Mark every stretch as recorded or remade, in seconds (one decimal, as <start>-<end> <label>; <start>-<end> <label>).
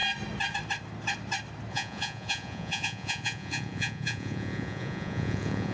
0.0-1.7 recorded; 1.7-5.7 remade